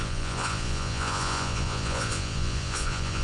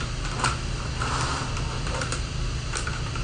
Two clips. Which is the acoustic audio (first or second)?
second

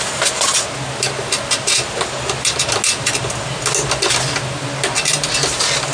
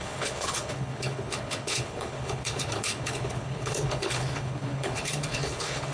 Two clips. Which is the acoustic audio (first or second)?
first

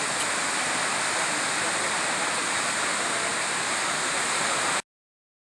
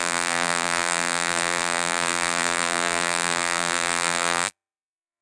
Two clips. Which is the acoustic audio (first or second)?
first